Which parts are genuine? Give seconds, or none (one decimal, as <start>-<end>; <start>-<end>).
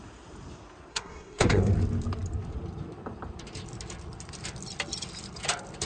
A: 0.0-0.9; 1.7-5.9